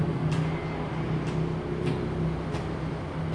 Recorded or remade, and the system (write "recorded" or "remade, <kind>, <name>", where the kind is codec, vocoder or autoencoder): recorded